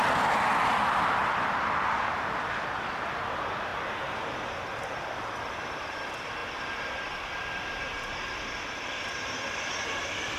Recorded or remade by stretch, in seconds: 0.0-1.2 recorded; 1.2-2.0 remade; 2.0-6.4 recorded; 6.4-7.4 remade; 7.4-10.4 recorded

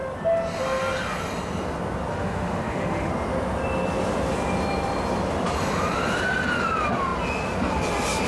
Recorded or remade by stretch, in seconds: 0.0-2.1 recorded; 2.1-3.1 remade; 3.1-8.3 recorded